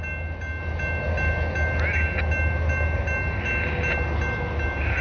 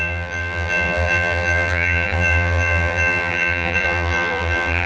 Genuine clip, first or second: first